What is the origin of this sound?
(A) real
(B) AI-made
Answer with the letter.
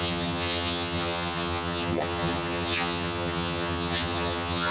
B